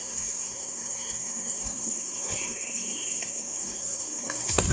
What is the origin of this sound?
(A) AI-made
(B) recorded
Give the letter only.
A